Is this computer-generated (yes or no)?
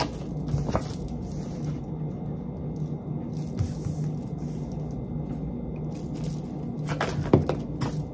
no